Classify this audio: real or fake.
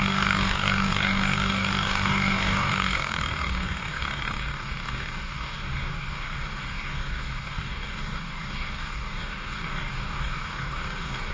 fake